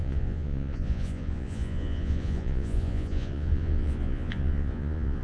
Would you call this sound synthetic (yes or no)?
yes